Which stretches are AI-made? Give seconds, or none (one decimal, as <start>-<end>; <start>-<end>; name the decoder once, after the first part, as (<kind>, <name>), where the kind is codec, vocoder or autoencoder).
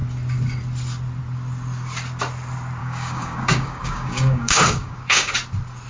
2.8-5.3 (codec, DAC)